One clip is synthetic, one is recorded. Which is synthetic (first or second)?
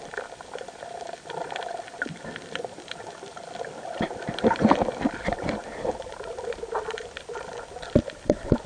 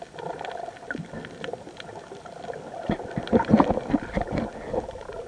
first